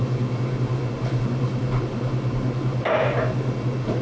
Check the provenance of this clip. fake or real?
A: real